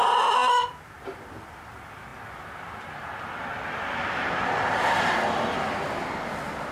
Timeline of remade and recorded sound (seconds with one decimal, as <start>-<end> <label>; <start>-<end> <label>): 0.0-0.4 remade; 0.4-1.0 recorded; 1.0-2.1 remade; 2.1-4.3 recorded; 4.3-6.7 remade